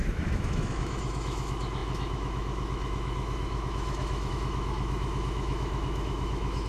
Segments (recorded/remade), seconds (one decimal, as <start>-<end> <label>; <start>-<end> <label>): 0.0-6.7 remade